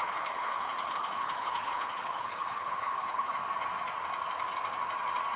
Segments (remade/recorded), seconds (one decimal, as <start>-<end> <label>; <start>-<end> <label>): 0.0-3.3 remade; 3.3-5.4 recorded